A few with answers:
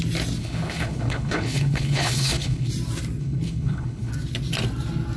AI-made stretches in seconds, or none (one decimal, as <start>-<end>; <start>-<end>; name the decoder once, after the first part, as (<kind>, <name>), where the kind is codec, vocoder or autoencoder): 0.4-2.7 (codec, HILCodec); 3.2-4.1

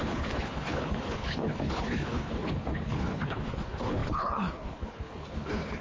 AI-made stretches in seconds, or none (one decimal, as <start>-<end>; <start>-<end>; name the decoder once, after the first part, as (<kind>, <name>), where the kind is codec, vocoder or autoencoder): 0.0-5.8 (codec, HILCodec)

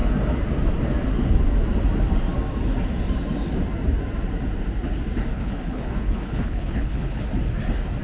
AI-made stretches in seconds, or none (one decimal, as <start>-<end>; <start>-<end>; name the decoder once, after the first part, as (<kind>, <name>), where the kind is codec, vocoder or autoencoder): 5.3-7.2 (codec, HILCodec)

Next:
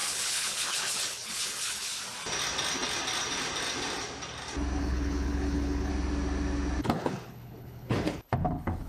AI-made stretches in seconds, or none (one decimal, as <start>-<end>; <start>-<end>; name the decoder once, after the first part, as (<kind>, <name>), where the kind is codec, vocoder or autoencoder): 0.0-1.9 (codec, HILCodec); 4.8-5.9; 6.8-8.9